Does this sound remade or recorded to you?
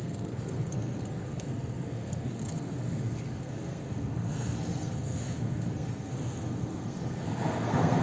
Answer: remade